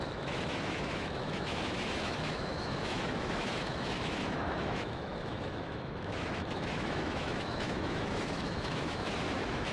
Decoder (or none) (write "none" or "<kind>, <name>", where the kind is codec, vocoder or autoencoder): autoencoder, DAC-VAE